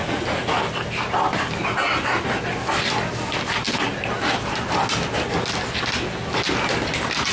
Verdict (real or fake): real